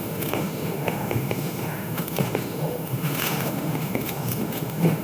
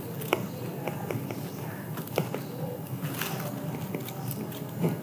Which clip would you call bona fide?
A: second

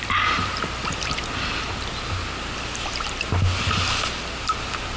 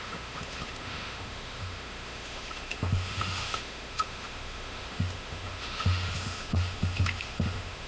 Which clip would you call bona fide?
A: first